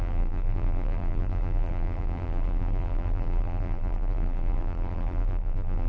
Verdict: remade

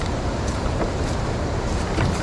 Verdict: remade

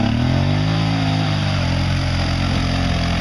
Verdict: recorded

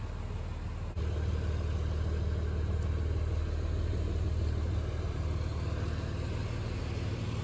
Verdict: recorded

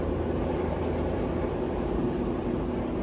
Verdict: recorded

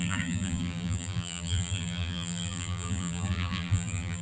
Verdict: remade